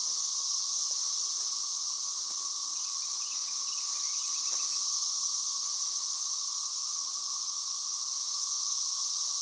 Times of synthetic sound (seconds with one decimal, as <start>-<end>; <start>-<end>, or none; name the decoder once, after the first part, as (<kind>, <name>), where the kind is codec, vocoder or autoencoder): 0.0-4.4 (vocoder, BigVGAN v2); 5.5-6.1; 6.8-8.3